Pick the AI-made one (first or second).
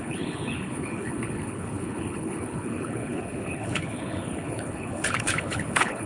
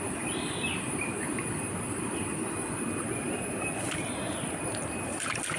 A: first